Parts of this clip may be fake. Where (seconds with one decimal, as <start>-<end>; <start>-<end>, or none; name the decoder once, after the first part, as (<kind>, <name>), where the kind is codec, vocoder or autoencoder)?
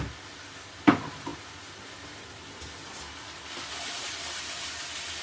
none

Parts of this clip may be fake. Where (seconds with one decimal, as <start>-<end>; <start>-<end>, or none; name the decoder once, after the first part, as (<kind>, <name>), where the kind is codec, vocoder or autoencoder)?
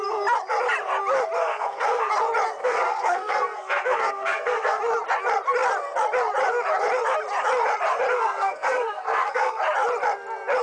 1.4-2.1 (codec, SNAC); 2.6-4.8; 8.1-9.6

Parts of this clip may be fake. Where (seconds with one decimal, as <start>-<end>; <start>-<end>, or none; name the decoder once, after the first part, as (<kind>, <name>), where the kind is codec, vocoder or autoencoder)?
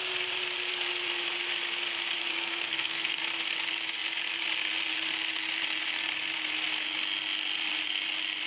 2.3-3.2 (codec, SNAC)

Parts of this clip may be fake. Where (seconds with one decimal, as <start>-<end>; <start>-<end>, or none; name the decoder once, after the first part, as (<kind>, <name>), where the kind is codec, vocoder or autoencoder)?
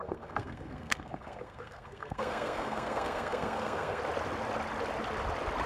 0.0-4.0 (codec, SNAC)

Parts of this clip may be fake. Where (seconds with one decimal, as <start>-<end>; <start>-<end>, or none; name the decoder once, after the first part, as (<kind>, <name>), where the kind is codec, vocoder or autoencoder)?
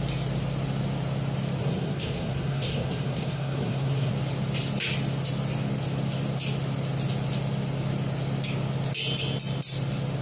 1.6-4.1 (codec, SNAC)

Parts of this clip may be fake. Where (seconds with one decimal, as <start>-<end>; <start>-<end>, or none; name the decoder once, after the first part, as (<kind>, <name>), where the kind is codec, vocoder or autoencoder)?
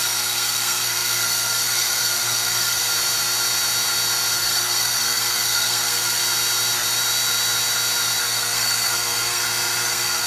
0.0-2.9 (codec, SNAC); 4.3-6.2; 8.2-9.4; 9.9-10.3